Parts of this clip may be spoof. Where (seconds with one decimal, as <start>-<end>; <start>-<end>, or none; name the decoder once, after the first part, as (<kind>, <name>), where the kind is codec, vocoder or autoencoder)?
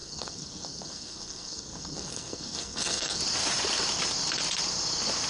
0.0-3.2 (codec, SNAC)